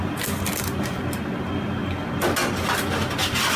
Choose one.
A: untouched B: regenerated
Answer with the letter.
A